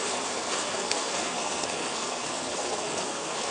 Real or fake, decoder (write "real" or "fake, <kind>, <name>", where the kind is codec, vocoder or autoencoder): fake, codec, SNAC